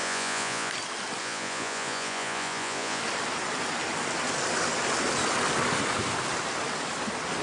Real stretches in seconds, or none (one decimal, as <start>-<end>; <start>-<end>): 0.7-1.2; 3.0-7.4